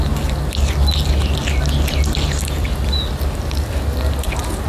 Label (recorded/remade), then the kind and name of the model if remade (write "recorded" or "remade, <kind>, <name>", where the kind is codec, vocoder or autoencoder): recorded